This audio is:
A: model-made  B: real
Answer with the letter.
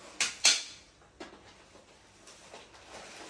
B